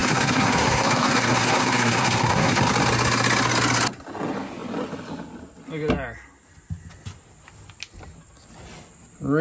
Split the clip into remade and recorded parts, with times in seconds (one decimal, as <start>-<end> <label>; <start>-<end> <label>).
0.0-2.6 remade; 2.6-9.4 recorded